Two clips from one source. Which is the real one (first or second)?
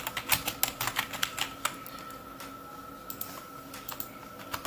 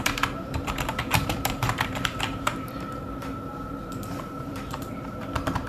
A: first